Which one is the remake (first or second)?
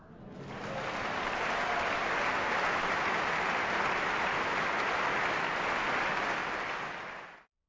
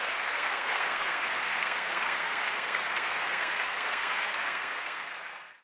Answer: second